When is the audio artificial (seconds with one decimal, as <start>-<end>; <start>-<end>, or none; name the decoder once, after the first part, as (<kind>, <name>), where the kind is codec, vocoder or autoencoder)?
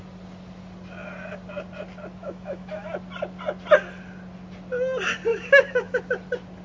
2.2-2.9 (autoencoder, DAC-VAE); 5.3-6.0